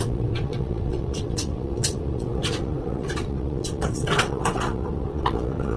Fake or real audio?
fake